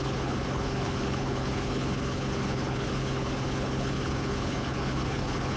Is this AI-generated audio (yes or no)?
yes